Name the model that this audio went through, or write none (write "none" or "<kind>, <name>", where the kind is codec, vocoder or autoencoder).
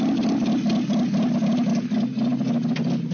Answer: none